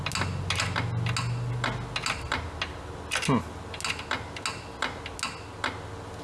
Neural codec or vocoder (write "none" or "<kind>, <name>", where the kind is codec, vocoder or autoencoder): none